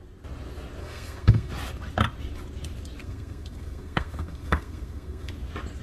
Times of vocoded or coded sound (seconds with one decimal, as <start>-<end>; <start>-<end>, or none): 0.8-1.5; 3.0-5.3